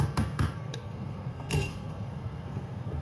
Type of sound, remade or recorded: remade